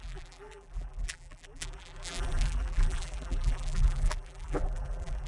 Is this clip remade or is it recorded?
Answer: remade